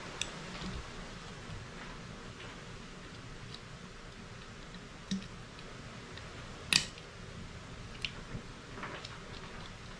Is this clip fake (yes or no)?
no